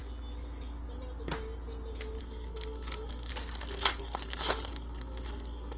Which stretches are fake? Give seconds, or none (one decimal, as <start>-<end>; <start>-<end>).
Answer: 2.2-3.3; 4.0-5.8